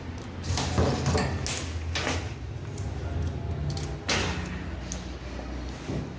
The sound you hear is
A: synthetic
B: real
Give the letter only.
B